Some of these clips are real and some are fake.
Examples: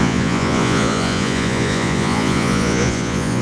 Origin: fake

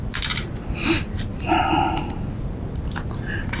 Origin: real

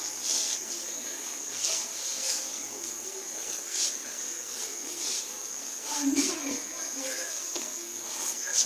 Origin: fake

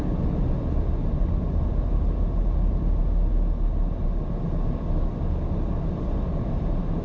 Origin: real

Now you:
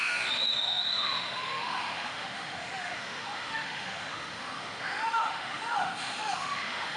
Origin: fake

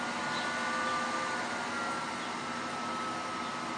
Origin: real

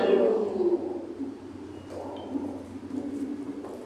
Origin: real